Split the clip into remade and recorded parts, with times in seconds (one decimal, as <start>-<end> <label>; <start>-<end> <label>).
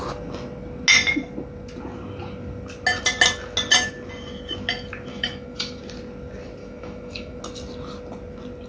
0.0-5.1 recorded; 5.1-5.8 remade; 5.8-6.6 recorded; 6.6-7.4 remade; 7.4-8.7 recorded